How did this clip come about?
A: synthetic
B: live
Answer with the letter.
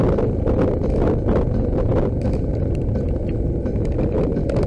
B